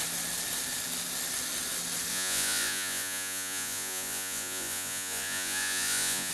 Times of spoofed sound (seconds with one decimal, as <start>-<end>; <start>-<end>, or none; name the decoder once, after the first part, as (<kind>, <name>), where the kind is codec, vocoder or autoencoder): 2.1-6.3 (vocoder, Vocos)